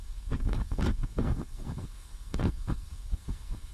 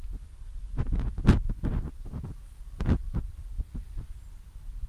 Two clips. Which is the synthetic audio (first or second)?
first